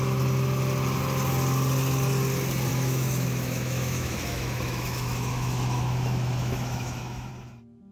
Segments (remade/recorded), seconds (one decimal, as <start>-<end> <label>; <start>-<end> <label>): 0.0-2.7 recorded; 2.7-7.3 remade; 7.3-7.9 recorded

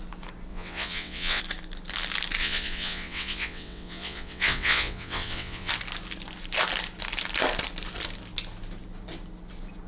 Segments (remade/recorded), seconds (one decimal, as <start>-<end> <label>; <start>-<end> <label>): 0.0-0.5 recorded; 0.5-1.4 remade; 1.4-2.4 recorded; 2.4-5.7 remade; 5.7-9.9 recorded